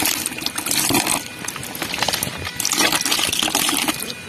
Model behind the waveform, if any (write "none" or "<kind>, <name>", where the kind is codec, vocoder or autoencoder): none